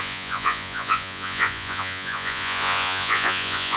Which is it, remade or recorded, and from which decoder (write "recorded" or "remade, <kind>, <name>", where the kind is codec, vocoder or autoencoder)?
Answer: remade, vocoder, Vocos